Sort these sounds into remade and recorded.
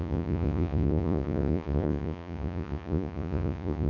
remade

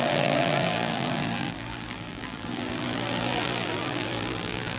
remade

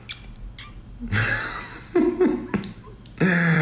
recorded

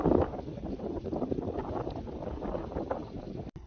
recorded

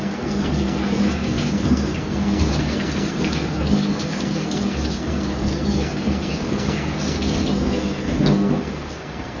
remade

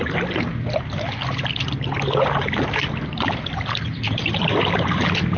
recorded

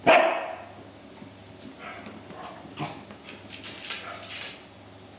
recorded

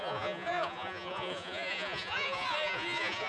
remade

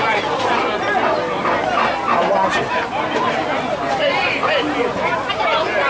recorded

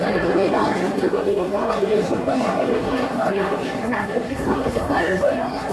remade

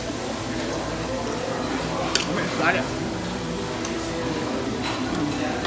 recorded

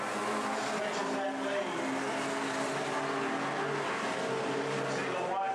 recorded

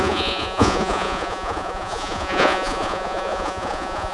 remade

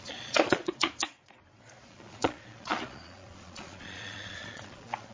remade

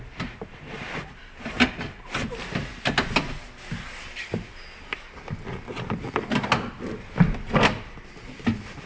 recorded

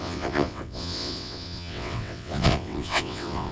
remade